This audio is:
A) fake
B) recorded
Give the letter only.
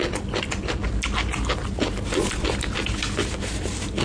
B